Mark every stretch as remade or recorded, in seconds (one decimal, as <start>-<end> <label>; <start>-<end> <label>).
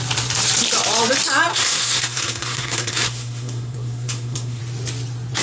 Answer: 0.0-1.5 recorded; 1.5-4.6 remade; 4.6-5.4 recorded